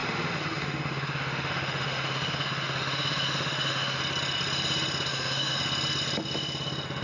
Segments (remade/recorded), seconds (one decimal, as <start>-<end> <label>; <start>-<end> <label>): 0.0-4.0 remade; 4.0-5.1 recorded; 5.1-5.6 remade; 5.6-7.0 recorded